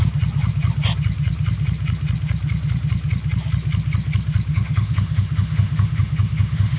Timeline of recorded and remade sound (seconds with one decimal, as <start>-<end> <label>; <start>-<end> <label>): 0.0-4.5 recorded; 4.5-6.8 remade